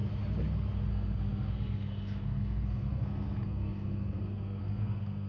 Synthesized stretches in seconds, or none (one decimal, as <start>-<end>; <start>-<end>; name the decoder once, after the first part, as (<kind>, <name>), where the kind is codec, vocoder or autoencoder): 0.9-5.3 (codec, SNAC)